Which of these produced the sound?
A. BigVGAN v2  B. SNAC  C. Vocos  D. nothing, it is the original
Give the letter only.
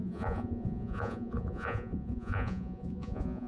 C